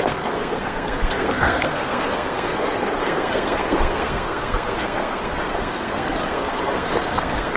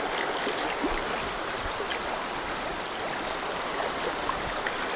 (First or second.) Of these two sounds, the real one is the second